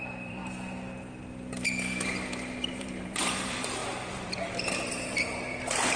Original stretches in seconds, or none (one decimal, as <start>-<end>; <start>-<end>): 0.4-2.7